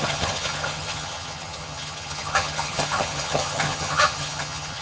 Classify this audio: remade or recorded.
remade